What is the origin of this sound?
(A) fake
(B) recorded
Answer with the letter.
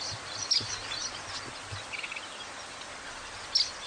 B